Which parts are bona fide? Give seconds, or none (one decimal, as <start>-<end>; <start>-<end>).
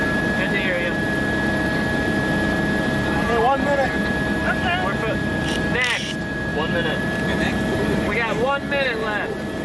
0.0-6.5; 7.6-9.6